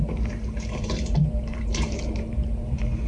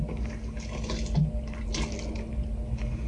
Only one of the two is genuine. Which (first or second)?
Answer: second